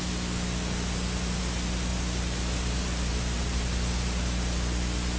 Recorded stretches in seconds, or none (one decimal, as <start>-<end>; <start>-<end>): 0.0-5.2